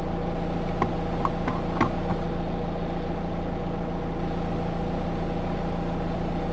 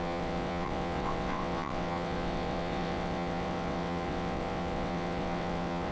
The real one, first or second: first